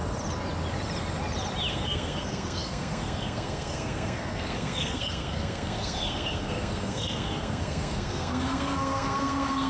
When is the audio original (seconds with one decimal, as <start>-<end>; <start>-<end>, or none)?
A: 0.0-1.7